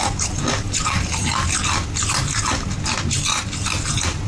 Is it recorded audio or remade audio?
recorded